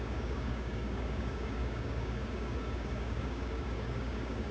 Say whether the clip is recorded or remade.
remade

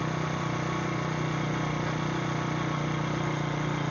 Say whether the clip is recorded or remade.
recorded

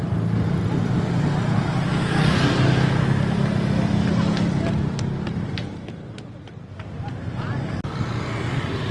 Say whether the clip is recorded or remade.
recorded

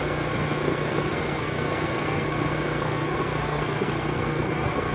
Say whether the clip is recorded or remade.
remade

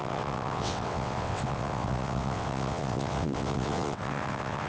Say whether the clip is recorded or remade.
remade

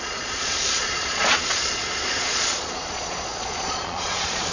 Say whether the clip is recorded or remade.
remade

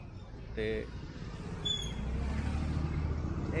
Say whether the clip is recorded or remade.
recorded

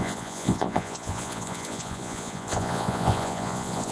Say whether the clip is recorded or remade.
remade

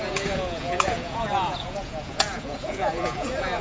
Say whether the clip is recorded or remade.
remade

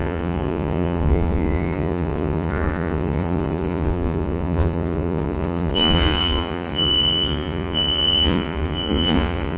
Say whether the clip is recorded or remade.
remade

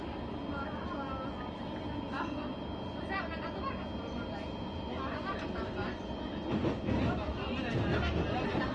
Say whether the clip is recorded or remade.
recorded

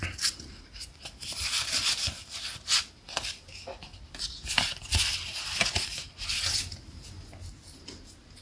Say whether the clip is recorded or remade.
recorded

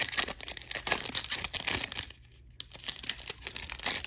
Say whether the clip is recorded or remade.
recorded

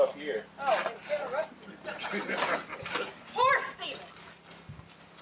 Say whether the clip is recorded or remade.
recorded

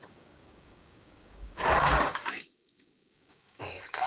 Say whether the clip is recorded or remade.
remade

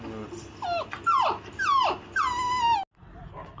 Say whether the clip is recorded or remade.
recorded